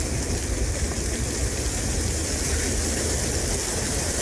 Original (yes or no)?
yes